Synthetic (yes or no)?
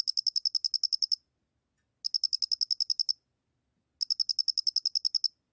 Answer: no